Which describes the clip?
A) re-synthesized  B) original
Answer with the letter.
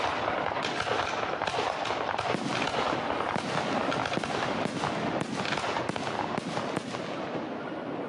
B